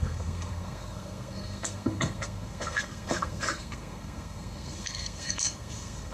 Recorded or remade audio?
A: remade